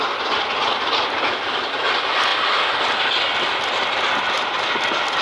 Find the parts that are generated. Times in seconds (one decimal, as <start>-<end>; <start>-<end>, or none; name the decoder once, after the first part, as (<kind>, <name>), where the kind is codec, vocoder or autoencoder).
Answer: none